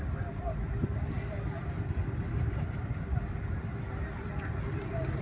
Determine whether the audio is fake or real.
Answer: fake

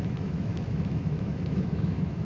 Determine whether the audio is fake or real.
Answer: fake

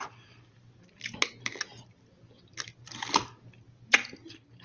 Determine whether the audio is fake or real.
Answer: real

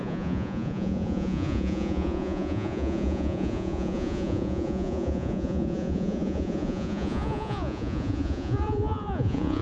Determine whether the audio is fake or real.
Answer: fake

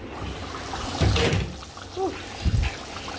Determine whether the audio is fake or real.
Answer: real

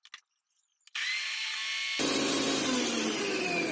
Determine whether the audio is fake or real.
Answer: real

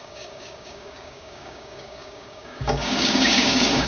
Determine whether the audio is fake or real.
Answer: fake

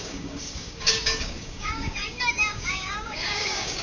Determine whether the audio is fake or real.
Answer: fake